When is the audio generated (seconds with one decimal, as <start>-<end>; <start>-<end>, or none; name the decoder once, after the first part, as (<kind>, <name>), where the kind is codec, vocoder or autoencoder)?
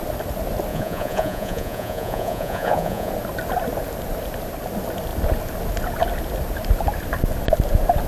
0.7-3.1 (vocoder, Vocos)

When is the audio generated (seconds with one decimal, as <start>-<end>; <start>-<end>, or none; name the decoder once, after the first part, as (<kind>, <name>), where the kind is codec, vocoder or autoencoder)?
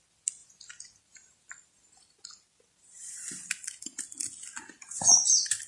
none